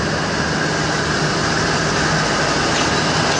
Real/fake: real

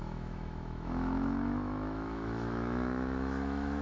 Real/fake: fake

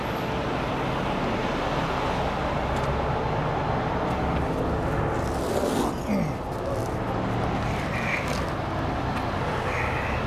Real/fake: real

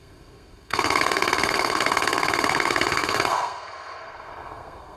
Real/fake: fake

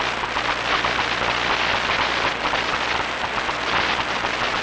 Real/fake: real